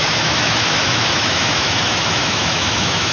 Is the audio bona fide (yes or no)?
no